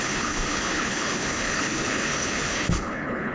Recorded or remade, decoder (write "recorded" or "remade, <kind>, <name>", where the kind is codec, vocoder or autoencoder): remade, codec, HILCodec